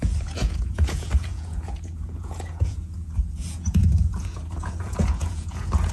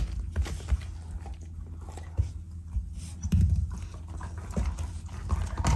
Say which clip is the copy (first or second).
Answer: first